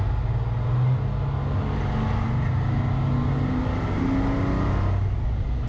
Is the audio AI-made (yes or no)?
no